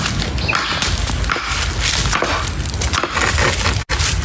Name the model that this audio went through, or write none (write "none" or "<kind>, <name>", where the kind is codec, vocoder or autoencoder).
none